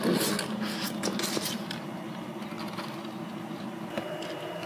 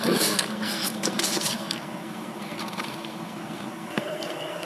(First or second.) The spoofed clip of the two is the second